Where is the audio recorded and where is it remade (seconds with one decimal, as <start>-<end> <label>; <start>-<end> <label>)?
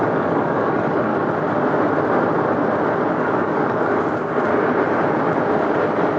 0.0-1.1 remade; 1.1-3.1 recorded; 3.1-4.5 remade; 4.5-6.2 recorded